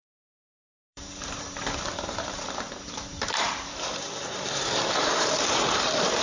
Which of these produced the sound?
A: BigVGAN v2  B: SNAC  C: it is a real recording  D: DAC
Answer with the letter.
A